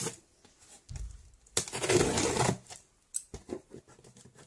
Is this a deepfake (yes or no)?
no